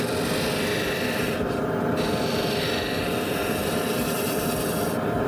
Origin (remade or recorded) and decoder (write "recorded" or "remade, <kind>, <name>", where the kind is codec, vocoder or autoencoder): recorded